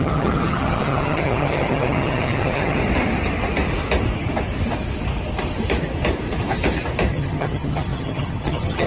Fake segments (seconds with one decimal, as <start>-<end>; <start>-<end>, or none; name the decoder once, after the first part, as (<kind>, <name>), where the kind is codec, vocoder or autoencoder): 0.0-2.8 (vocoder, HiFi-GAN); 7.1-8.9